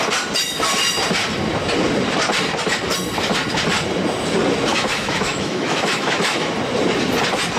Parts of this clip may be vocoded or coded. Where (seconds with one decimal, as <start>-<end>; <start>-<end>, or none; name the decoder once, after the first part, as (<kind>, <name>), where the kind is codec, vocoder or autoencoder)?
4.7-6.5 (autoencoder, DAC-VAE)